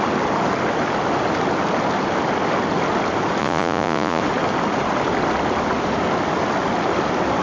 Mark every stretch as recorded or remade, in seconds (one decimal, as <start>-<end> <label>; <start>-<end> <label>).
0.0-3.4 recorded; 3.4-4.2 remade; 4.2-7.4 recorded